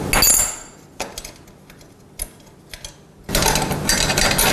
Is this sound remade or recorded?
recorded